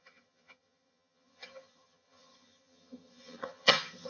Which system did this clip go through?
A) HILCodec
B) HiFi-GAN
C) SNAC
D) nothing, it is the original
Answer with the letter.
B